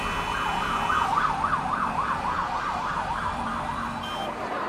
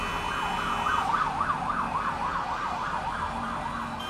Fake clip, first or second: first